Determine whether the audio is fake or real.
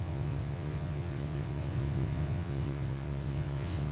fake